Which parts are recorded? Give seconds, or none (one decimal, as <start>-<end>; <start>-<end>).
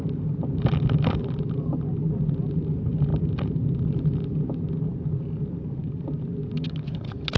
0.0-7.4